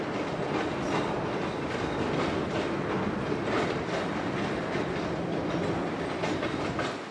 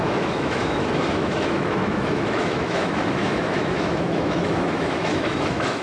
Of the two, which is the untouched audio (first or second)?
first